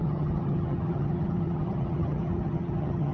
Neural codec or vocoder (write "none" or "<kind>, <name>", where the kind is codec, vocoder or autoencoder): vocoder, HiFi-GAN